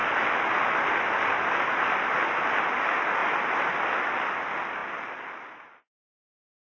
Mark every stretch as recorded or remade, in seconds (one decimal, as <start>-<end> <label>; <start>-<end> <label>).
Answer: 0.0-6.7 recorded